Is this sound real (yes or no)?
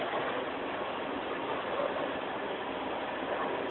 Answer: yes